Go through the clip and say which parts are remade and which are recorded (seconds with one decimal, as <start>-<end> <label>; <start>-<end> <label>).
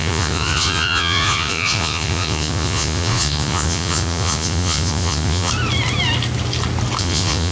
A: 0.0-5.5 remade; 5.5-7.0 recorded; 7.0-7.5 remade